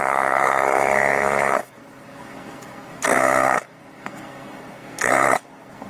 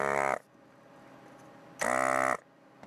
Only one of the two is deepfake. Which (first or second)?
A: first